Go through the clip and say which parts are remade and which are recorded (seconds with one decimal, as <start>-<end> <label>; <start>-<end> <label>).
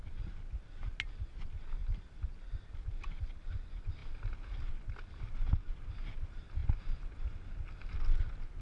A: 0.0-8.6 recorded